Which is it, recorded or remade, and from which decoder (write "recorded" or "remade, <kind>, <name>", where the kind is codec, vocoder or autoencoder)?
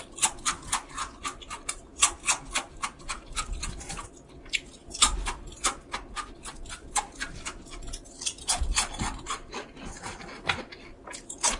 recorded